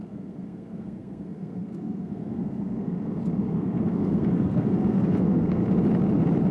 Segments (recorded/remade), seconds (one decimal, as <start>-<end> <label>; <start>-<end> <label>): 0.0-5.6 remade; 5.6-6.5 recorded